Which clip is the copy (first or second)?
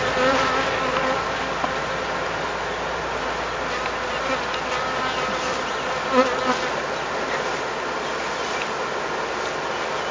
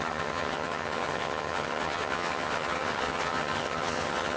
second